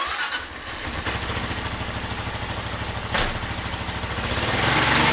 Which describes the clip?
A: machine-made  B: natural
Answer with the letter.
B